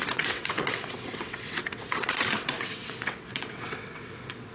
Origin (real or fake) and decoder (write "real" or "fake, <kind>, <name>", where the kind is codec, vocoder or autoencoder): fake, vocoder, WaveNeXt